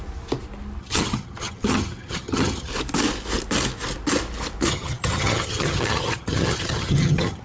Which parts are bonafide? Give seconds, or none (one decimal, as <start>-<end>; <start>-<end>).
0.0-0.8; 2.7-4.7